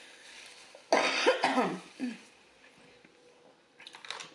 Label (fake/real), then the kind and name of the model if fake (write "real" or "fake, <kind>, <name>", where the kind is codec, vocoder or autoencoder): real